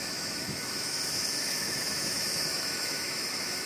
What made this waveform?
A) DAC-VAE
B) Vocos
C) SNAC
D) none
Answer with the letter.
A